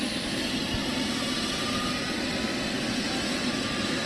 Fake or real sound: real